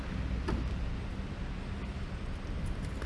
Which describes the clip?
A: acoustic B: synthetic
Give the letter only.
B